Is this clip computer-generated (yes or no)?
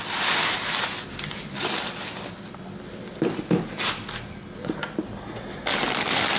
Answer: no